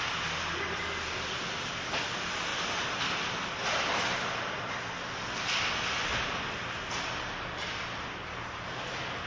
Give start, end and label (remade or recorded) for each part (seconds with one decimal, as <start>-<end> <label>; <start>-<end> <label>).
0.0-9.3 recorded